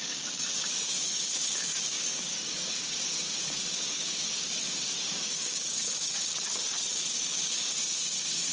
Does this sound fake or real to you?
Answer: fake